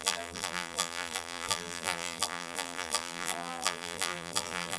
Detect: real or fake fake